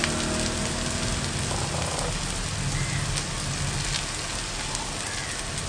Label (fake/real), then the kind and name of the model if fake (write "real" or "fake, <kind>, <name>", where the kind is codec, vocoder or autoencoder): real